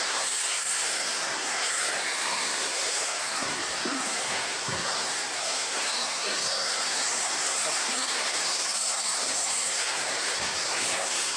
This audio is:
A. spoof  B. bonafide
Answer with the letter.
A